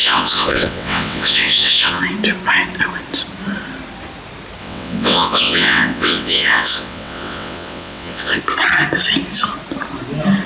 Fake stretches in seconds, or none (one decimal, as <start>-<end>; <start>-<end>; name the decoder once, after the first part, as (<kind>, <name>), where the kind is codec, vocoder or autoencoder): 0.0-2.0 (vocoder, WaveNeXt); 4.6-8.4